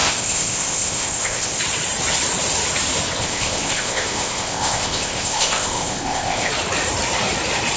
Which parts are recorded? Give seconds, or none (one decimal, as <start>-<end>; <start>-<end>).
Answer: 1.6-3.2; 6.5-7.8

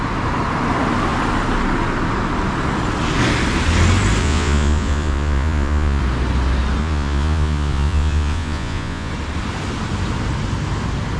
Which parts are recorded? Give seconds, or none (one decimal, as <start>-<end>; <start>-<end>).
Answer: 0.0-4.2; 6.0-6.8; 9.1-11.2